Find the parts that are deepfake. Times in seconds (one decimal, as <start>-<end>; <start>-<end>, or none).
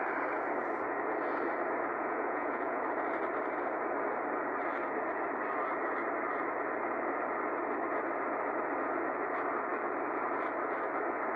1.9-2.8